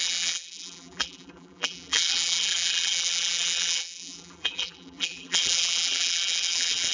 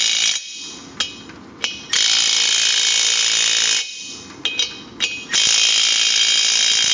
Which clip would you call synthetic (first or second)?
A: first